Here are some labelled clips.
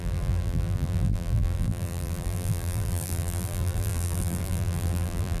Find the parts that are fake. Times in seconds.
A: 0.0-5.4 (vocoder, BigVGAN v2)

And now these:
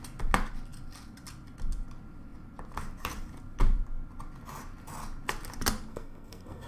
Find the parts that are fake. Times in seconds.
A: 5.9-6.7 (codec, SNAC)

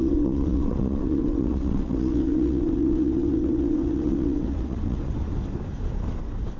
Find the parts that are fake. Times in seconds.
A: 0.0-5.1 (vocoder, WaveNeXt)

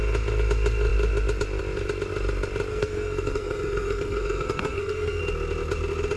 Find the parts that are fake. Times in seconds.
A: 2.7-5.2 (codec, SNAC)